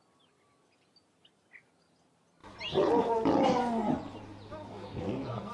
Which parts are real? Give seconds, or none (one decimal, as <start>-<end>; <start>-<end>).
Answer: 0.0-4.7

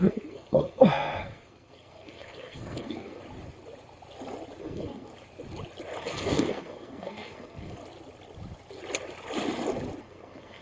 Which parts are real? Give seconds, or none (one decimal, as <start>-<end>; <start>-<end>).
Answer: 3.2-4.6; 5.1-6.0; 7.8-10.0

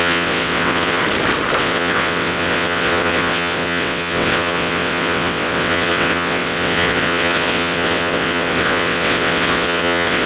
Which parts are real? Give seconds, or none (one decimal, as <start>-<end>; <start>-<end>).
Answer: 1.0-1.6

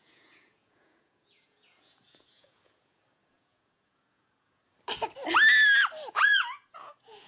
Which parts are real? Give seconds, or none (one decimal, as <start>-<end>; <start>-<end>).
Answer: 4.6-6.1

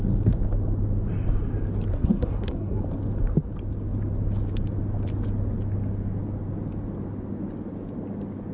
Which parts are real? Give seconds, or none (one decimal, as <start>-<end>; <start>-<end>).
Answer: 0.0-1.9; 2.8-8.5

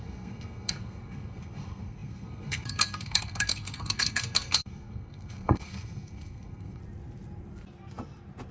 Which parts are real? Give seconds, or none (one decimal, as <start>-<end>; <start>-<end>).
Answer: 6.8-8.5

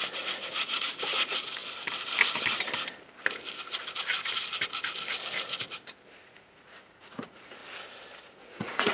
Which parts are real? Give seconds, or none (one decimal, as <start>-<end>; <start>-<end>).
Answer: 1.6-6.2; 7.6-8.2